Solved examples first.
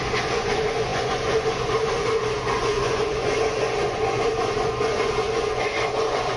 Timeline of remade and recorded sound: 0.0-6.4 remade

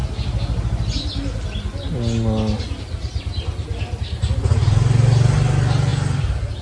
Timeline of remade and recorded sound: 0.0-6.6 recorded

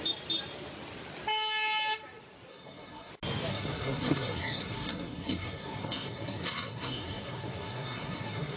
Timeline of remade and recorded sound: 0.0-2.5 recorded; 2.5-3.1 remade; 3.1-3.5 recorded; 3.5-8.6 remade

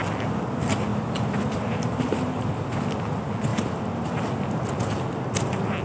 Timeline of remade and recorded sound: 0.0-0.9 recorded; 0.9-2.5 remade; 2.5-3.5 recorded; 3.5-4.1 remade; 4.1-5.8 recorded